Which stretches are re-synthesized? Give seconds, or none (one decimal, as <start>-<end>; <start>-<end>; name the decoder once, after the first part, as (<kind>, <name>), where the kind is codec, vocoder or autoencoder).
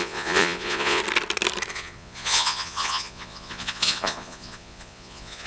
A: 0.0-1.0 (vocoder, Vocos); 1.7-5.5